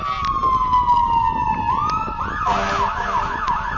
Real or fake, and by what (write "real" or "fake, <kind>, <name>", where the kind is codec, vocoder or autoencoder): real